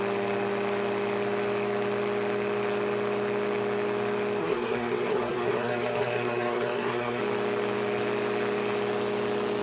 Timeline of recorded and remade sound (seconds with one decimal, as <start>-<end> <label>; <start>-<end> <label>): 0.0-4.4 recorded; 4.4-7.2 remade; 7.2-9.6 recorded

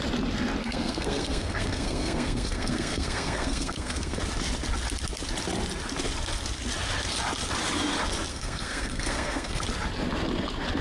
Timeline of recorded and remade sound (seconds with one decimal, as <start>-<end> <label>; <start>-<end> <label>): 0.0-0.6 recorded; 0.6-4.2 remade; 4.2-8.3 recorded; 8.3-9.6 remade; 9.6-10.8 recorded

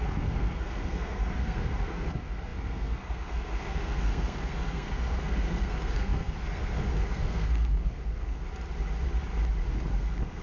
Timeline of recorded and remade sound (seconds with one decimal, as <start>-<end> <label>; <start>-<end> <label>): 0.0-8.4 remade; 8.4-9.9 recorded; 9.9-10.4 remade

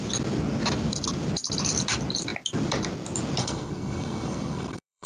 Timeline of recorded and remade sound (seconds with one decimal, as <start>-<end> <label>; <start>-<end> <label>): 0.0-3.4 recorded; 3.4-5.1 remade

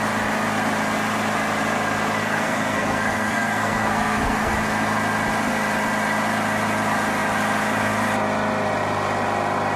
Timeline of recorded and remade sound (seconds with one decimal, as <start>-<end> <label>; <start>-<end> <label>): 0.0-2.2 recorded; 2.2-4.6 remade; 4.6-9.8 recorded

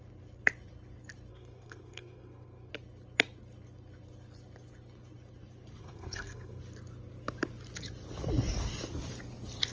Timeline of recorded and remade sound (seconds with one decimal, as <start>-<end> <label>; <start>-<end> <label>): 0.0-1.3 recorded; 1.3-2.7 remade; 2.7-5.8 recorded; 5.8-6.6 remade; 6.6-9.7 recorded

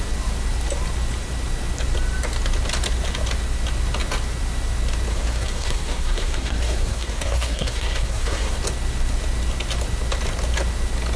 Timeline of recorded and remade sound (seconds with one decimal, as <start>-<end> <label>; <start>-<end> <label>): 0.0-5.1 recorded; 5.1-8.6 remade; 8.6-11.2 recorded